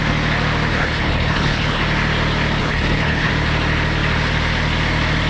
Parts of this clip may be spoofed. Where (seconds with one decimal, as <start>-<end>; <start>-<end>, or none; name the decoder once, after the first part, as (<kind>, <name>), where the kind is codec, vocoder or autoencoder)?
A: 0.7-1.8 (codec, HILCodec); 2.6-3.3